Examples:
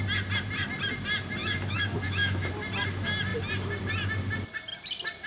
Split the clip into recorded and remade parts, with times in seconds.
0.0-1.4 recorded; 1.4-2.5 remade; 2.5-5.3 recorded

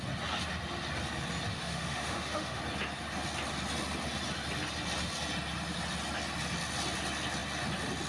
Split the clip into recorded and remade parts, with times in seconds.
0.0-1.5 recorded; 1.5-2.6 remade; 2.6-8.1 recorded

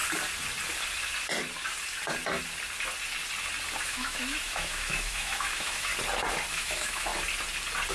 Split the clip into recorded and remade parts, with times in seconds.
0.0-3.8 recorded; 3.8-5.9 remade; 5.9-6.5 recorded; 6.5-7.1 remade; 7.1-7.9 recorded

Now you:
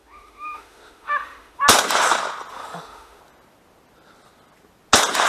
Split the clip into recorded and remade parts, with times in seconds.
0.0-1.6 remade; 1.6-2.5 recorded; 2.5-3.2 remade; 3.2-5.3 recorded

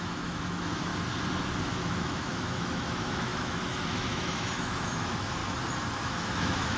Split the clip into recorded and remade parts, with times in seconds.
0.0-0.9 remade; 0.9-1.6 recorded; 1.6-5.4 remade; 5.4-6.0 recorded; 6.0-6.8 remade

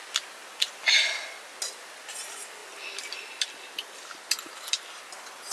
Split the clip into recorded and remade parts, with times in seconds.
0.0-5.5 recorded

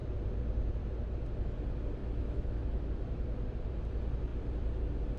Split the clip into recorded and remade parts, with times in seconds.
0.0-2.0 recorded; 2.0-2.9 remade; 2.9-5.2 recorded

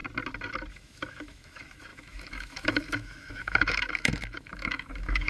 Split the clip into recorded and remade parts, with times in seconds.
0.0-0.7 recorded; 0.7-5.3 remade